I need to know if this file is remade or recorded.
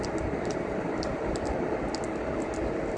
remade